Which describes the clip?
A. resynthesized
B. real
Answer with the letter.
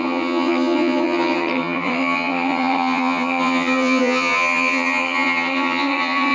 A